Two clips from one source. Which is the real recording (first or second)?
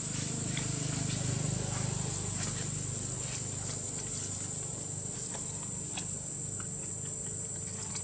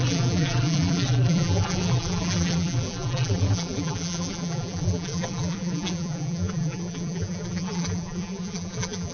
first